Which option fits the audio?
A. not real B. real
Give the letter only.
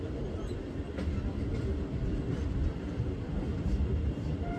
B